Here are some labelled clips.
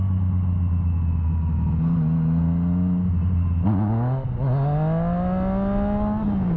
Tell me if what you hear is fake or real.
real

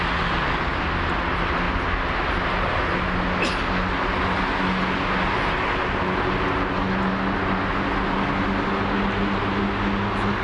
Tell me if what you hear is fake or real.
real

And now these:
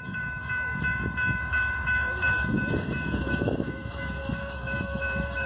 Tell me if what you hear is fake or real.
fake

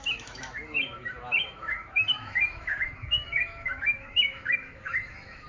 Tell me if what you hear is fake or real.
fake